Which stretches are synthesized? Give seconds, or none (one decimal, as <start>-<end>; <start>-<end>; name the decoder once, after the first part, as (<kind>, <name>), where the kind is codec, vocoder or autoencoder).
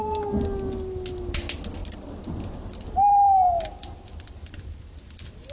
none